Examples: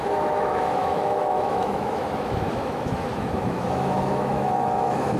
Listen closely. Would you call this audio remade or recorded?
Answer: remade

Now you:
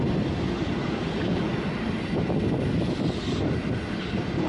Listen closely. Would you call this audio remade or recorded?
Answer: recorded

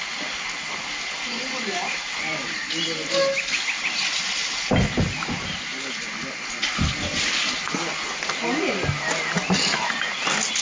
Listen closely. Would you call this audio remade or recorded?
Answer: recorded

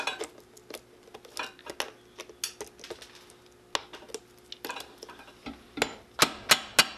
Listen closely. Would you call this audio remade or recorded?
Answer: recorded